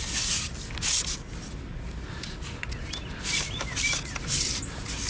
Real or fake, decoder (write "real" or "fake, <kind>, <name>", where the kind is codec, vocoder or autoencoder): real